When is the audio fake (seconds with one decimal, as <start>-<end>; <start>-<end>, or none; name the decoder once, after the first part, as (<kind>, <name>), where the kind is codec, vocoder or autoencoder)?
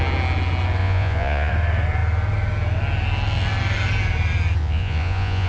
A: 0.8-1.5 (vocoder, Vocos); 4.6-5.5